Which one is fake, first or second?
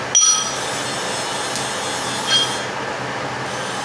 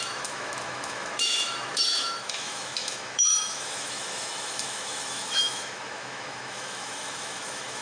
second